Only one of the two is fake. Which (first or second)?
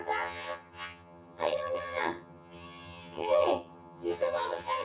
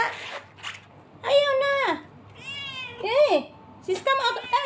first